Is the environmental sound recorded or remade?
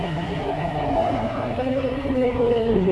remade